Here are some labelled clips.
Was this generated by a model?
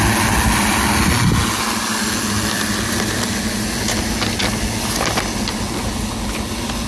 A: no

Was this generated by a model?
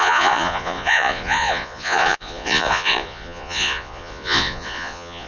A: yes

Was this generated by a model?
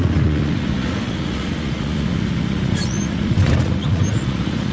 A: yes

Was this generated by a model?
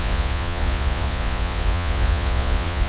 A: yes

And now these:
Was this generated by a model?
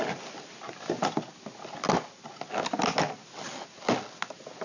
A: no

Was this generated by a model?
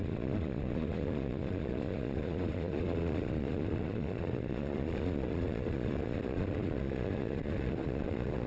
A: yes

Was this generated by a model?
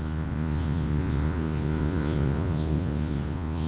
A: yes